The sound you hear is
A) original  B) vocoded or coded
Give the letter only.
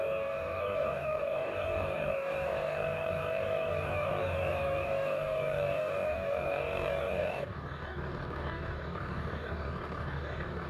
B